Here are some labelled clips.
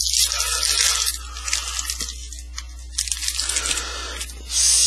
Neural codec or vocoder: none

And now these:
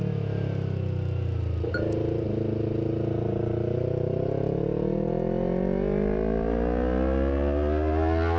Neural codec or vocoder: none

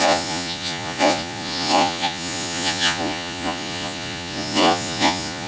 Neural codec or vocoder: vocoder, Vocos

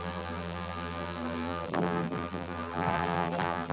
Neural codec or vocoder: vocoder, BigVGAN v2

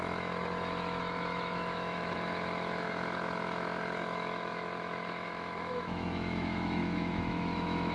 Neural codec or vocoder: autoencoder, DAC-VAE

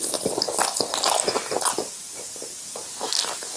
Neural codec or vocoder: none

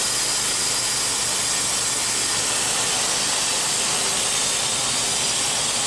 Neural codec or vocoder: none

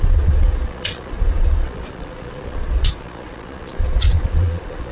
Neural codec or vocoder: vocoder, Vocos